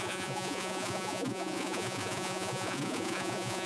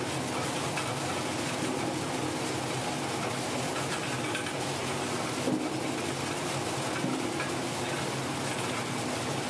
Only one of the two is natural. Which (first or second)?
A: second